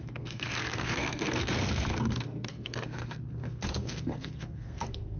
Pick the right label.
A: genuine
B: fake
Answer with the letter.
B